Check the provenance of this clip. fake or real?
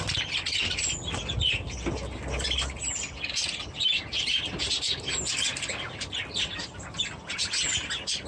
real